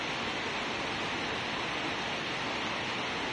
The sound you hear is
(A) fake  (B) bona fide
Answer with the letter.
B